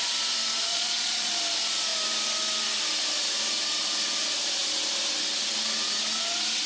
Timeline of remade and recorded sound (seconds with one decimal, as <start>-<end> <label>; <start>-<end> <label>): 0.0-0.7 recorded; 0.7-1.3 remade; 1.3-6.7 recorded